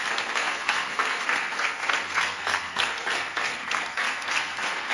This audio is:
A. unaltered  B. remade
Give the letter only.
B